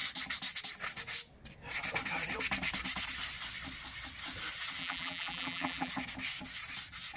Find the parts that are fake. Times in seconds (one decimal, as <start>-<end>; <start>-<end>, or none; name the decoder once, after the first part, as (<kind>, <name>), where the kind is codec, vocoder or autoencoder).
4.8-5.9 (vocoder, BigVGAN v2)